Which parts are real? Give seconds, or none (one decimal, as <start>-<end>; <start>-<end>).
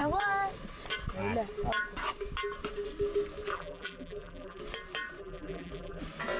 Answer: 0.0-3.5; 4.6-5.2; 6.0-6.4